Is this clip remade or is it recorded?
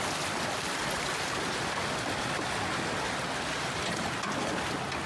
recorded